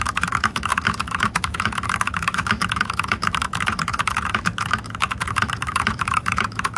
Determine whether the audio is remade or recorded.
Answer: remade